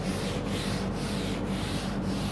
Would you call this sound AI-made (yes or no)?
yes